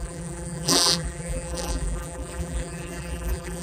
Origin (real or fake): fake